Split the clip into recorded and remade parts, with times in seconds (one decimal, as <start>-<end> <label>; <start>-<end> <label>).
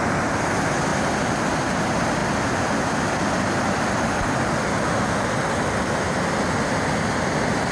0.0-7.7 recorded